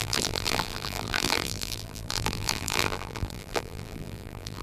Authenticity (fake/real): fake